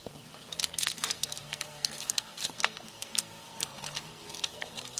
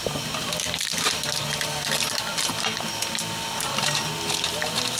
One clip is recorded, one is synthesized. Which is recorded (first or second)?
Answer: second